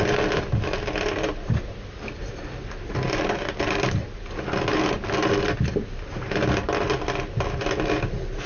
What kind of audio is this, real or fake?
real